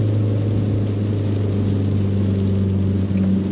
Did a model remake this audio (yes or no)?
no